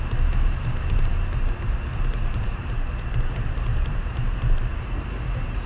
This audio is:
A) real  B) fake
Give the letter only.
B